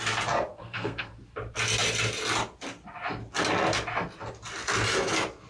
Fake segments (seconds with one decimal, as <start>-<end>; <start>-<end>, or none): 0.5-1.1